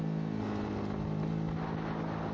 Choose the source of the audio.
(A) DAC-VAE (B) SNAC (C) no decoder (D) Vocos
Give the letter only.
C